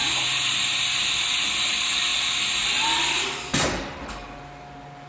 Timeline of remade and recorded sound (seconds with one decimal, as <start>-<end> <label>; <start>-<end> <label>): 0.0-5.1 recorded